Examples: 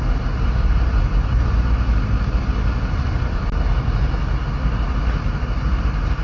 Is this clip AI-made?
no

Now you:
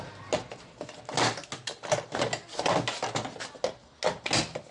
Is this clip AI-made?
no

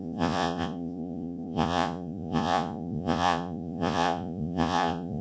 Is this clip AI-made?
yes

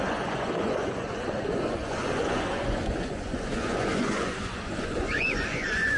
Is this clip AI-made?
yes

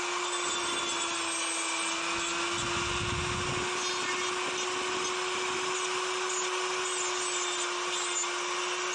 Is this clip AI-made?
no